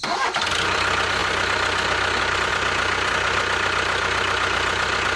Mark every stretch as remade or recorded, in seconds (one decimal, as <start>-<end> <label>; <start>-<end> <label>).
0.0-5.2 recorded